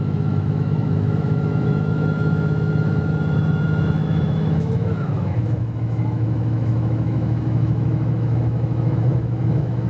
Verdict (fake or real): fake